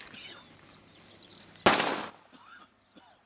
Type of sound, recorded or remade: recorded